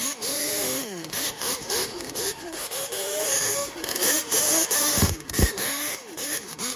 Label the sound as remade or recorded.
remade